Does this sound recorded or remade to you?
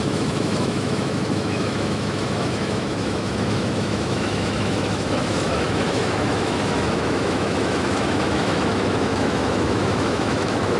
remade